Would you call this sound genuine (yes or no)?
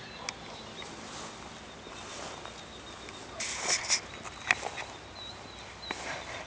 yes